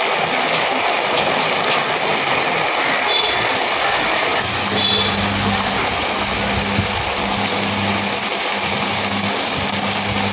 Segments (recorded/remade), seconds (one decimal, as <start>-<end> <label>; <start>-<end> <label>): 0.0-10.3 recorded